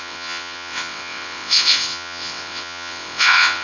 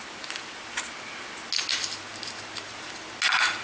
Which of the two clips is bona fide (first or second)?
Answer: second